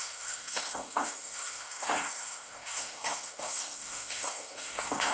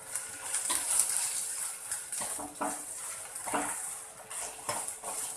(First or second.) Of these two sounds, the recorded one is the second